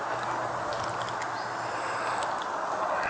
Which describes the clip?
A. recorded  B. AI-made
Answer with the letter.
A